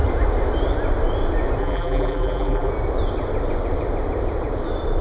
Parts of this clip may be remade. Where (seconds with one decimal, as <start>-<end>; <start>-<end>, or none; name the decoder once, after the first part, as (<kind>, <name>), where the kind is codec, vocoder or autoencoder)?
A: 1.6-2.7 (vocoder, BigVGAN v2)